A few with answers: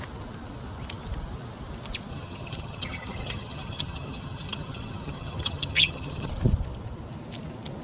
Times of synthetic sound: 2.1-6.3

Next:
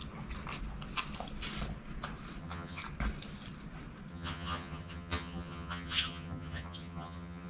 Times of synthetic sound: 2.4-2.8; 4.1-7.5

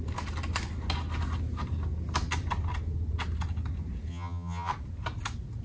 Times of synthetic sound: 4.1-4.7

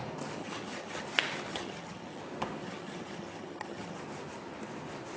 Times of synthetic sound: 0.4-1.0; 1.5-2.2; 2.6-4.0